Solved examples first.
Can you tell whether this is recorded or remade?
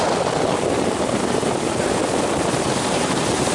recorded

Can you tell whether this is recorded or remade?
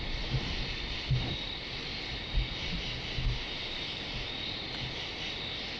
recorded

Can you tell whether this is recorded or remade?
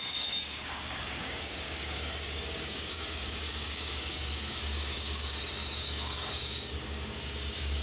remade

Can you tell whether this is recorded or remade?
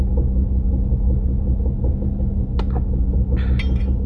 recorded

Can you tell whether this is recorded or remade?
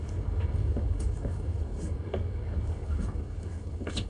remade